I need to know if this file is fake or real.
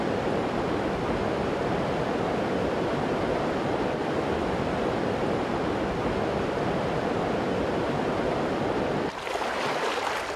real